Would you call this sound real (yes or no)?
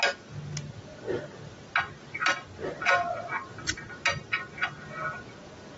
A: yes